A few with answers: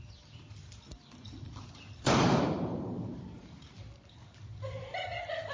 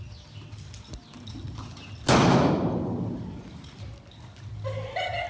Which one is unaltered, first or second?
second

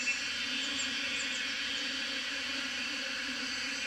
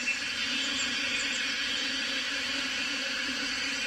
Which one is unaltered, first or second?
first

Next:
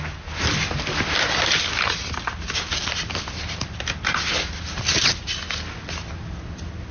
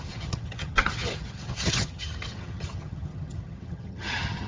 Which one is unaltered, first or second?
first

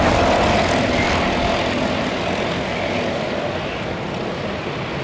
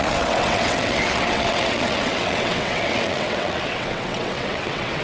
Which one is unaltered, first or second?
first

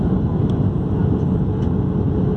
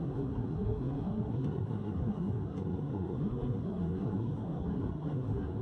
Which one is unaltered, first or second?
first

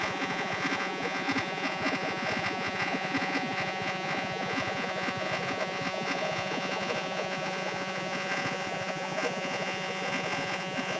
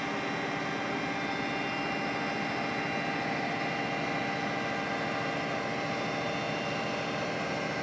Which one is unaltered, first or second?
second